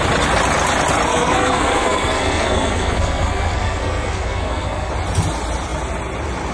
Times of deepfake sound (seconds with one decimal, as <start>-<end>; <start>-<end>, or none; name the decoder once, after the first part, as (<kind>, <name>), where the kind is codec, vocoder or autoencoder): 1.1-4.9 (codec, SNAC)

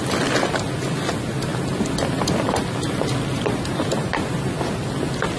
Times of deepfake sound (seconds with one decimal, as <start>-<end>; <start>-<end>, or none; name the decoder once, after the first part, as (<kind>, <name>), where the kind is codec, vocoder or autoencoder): none

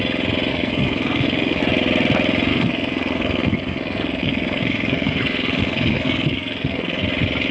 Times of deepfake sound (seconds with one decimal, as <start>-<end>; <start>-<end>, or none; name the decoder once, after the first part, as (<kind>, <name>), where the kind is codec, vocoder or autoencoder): 0.5-1.6 (codec, SNAC); 2.5-7.0

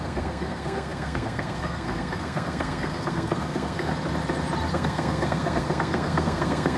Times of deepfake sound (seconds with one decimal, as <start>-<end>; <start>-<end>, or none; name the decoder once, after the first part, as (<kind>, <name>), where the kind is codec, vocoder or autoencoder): 0.0-3.9 (codec, SNAC); 4.7-6.8

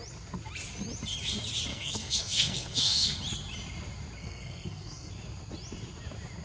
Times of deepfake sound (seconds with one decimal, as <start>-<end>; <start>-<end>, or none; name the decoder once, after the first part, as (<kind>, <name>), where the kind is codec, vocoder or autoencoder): 1.7-3.2 (codec, SNAC); 4.2-5.1

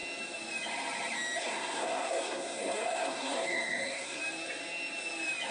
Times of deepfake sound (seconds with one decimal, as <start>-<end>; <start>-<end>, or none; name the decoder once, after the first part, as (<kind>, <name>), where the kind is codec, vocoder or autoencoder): 1.4-4.2 (codec, SNAC)